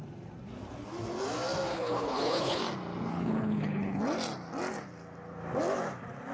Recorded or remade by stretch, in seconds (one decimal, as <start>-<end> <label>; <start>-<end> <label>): 0.0-1.7 recorded; 1.7-2.6 remade; 2.6-3.1 recorded; 3.1-4.0 remade; 4.0-6.3 recorded